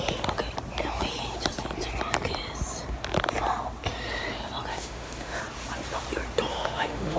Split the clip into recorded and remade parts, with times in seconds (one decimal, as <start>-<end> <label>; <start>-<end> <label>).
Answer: 0.0-4.7 recorded; 4.7-5.4 remade; 5.4-6.5 recorded; 6.5-7.2 remade